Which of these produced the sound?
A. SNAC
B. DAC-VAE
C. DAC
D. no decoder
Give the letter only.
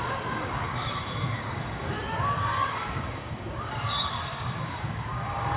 C